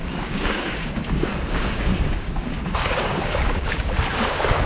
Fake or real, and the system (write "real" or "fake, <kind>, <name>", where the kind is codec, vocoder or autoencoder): fake, codec, DAC